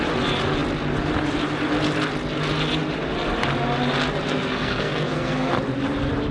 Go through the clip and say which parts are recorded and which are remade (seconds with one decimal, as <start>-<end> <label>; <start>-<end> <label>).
0.0-4.3 recorded; 4.3-5.5 remade; 5.5-6.3 recorded